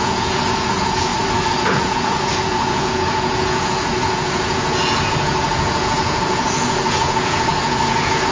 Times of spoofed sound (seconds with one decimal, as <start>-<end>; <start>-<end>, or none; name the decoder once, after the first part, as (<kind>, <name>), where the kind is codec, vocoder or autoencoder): 0.0-1.1 (vocoder, Vocos); 1.7-8.3